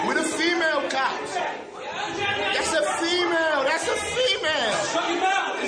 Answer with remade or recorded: recorded